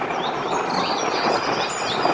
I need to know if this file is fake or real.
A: real